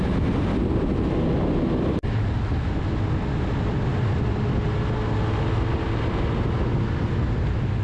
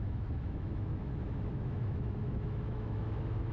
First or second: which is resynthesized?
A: second